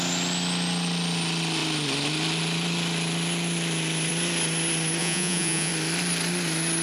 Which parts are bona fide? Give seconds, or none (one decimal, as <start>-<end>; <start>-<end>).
0.0-5.0; 5.7-6.8